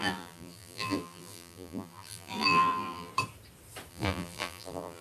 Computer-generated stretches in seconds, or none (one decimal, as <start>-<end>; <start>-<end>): 0.0-3.1; 3.9-5.0